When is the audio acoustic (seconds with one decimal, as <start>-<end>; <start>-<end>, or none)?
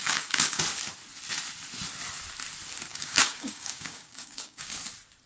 0.6-2.9; 4.8-5.3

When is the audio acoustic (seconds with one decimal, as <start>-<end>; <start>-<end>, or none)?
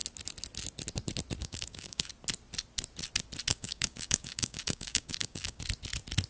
0.0-1.4; 2.1-3.5; 5.6-6.3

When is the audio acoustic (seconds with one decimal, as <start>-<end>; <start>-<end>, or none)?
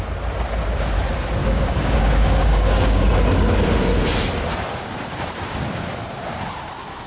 0.0-1.4; 3.1-7.1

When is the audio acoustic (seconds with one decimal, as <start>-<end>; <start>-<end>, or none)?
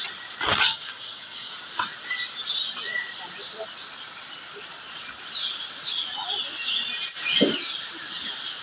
0.0-0.7; 1.5-8.6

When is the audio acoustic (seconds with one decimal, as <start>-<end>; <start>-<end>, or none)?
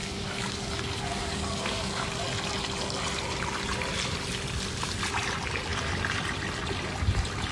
2.2-7.5